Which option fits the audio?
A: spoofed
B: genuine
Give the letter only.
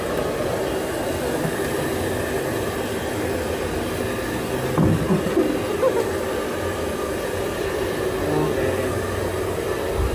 B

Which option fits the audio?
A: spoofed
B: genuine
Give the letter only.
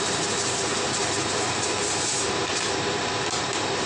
A